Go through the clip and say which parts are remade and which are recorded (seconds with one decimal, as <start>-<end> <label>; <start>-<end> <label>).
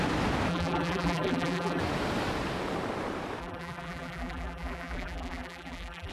0.0-0.5 recorded; 0.5-1.8 remade; 1.8-3.4 recorded; 3.4-6.1 remade